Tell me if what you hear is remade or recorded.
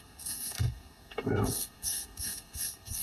remade